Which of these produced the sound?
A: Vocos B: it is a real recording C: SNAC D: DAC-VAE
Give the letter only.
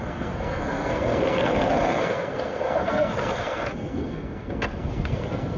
C